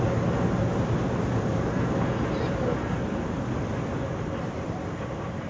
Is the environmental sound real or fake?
real